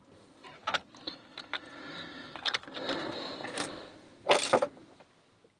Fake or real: real